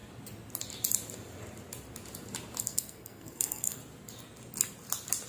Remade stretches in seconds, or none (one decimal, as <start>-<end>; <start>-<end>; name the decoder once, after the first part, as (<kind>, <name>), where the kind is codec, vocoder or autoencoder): 2.6-3.8 (codec, SNAC)